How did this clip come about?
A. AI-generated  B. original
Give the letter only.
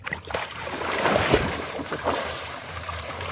A